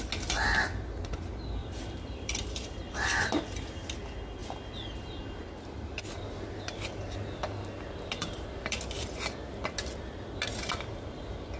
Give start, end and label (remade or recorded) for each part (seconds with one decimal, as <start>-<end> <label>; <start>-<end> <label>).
0.0-1.6 recorded; 1.6-3.5 remade; 3.5-4.4 recorded; 4.4-5.7 remade; 5.7-8.2 recorded; 8.2-10.2 remade; 10.2-11.6 recorded